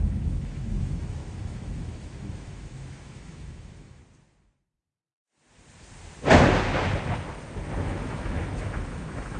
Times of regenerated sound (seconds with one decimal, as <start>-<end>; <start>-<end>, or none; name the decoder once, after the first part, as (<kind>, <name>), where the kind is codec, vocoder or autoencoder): 0.0-4.0 (autoencoder, DAC-VAE); 7.8-9.4